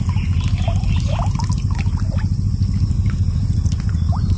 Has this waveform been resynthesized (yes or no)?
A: no